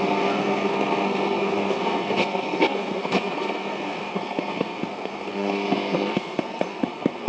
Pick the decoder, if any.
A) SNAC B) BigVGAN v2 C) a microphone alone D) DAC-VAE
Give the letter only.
A